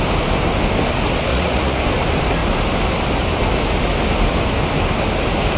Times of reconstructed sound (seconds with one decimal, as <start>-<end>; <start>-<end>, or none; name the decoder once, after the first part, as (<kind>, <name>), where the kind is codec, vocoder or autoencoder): 1.3-1.8 (vocoder, Vocos)